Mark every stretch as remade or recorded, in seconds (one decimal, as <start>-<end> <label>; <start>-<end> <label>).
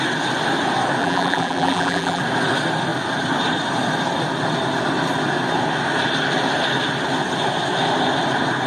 0.0-1.0 recorded; 1.0-2.2 remade; 2.2-8.7 recorded